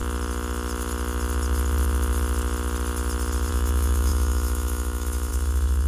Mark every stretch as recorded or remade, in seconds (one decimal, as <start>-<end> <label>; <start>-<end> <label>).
0.0-3.5 recorded; 3.5-5.9 remade